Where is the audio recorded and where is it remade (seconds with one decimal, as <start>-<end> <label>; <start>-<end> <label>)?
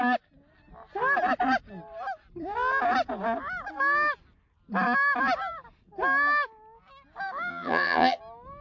0.0-7.5 recorded; 7.5-8.2 remade; 8.2-8.6 recorded